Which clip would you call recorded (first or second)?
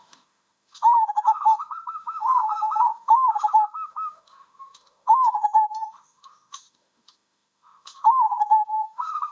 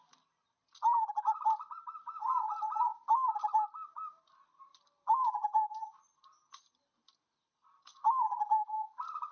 second